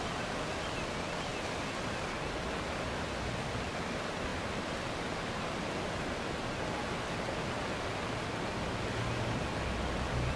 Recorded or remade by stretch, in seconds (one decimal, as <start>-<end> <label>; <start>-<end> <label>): 0.0-4.3 recorded; 4.3-5.4 remade; 5.4-10.4 recorded